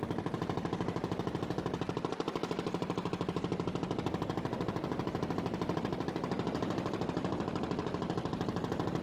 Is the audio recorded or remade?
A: recorded